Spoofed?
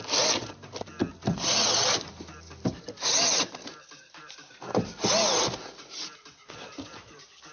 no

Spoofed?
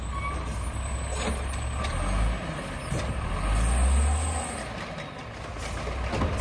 no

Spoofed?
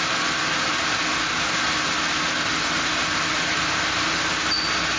no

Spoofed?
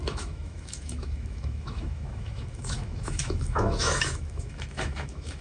yes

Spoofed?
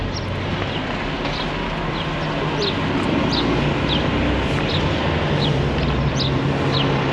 no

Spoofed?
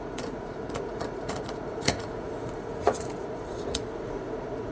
yes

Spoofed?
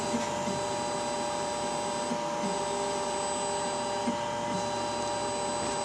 no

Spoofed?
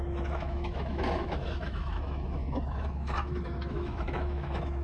yes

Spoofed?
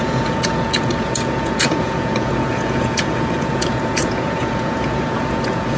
yes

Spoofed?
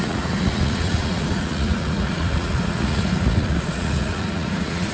yes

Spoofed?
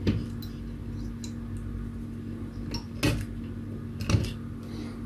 no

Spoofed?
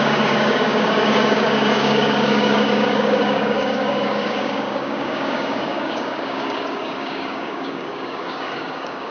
yes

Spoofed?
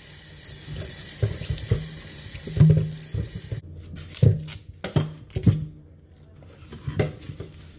no